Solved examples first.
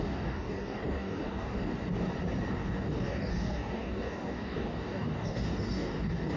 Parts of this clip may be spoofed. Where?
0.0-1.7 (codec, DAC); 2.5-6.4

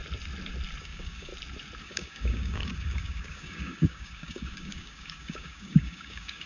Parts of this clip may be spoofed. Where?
0.8-1.3 (codec, DAC); 1.8-6.5

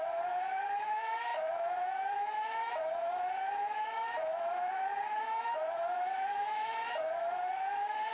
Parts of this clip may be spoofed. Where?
0.0-8.1 (autoencoder, DAC-VAE)

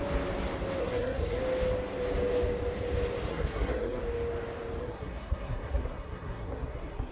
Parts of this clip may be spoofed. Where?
0.8-1.4 (codec, SNAC); 3.3-4.0; 4.8-7.1

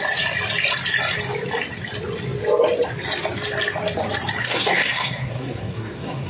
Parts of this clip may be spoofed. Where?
4.4-6.3 (codec, SNAC)

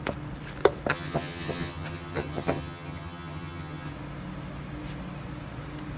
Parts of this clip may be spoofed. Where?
0.9-3.9 (vocoder, HiFi-GAN)

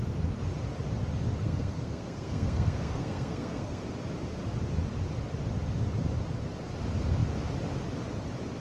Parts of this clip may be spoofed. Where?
1.4-3.8 (codec, SNAC)

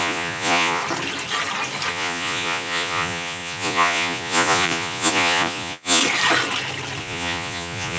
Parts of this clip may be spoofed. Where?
0.0-0.8 (vocoder, Vocos); 1.9-6.0; 7.0-8.0